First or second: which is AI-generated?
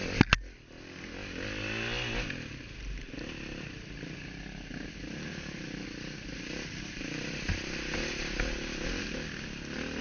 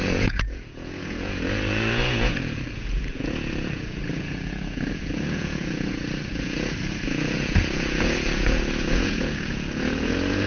second